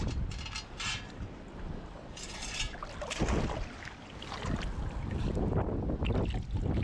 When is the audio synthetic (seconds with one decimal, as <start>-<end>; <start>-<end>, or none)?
none